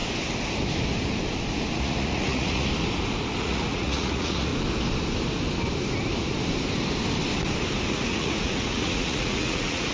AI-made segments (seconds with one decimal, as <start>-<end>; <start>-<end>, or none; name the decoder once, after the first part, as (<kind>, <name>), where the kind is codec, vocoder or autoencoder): 1.8-2.7 (vocoder, Vocos); 3.4-4.5; 7.9-9.9